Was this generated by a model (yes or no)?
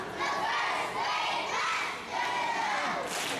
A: no